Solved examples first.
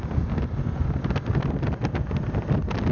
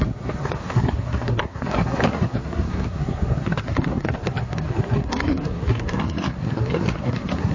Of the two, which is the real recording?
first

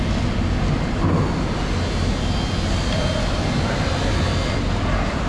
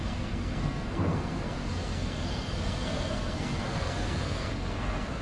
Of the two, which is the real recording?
first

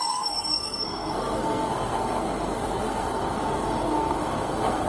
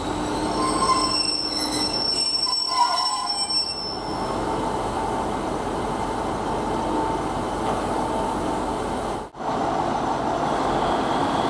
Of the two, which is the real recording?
second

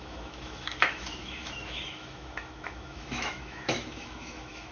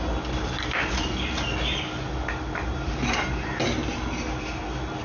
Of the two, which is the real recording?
second